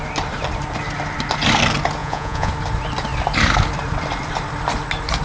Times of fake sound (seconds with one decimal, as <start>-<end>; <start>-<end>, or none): 2.0-2.5